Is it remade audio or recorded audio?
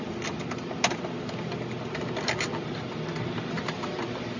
recorded